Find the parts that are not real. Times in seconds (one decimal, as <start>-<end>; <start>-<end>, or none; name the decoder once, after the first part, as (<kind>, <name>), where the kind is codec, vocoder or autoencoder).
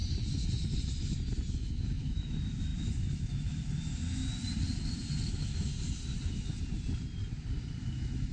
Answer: 1.5-4.2 (autoencoder, DAC-VAE); 5.3-5.7; 7.8-8.3